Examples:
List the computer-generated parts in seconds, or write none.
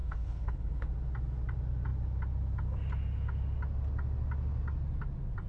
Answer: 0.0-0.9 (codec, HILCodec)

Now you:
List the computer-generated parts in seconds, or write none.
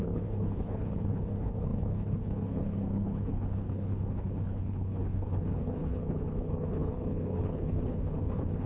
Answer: 0.0-8.7 (codec, HILCodec)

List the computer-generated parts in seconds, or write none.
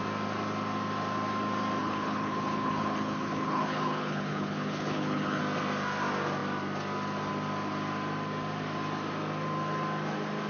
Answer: 1.8-5.4 (codec, HILCodec)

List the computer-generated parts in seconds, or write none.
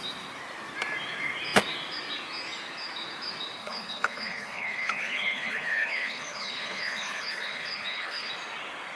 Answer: 3.6-8.3 (codec, HILCodec)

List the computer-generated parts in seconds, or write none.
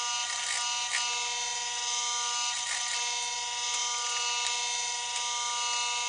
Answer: none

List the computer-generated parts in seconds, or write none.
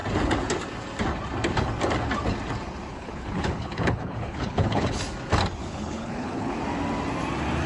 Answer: 2.9-5.0 (codec, HILCodec); 5.6-6.6